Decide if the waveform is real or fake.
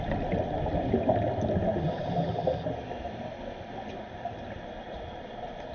real